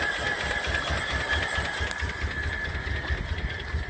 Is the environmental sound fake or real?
real